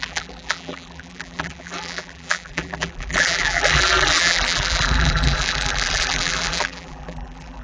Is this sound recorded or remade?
remade